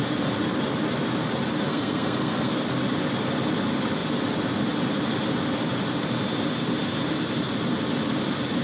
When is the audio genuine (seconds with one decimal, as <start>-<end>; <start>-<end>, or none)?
0.0-1.7; 2.5-8.6